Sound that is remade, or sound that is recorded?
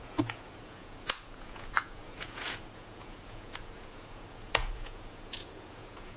remade